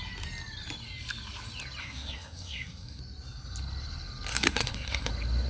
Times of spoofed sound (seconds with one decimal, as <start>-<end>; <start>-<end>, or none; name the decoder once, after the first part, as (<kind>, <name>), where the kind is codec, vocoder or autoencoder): 1.8-3.0 (codec, SNAC); 4.3-5.1